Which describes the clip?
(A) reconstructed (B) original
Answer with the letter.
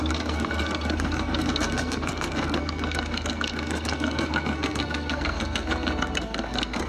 A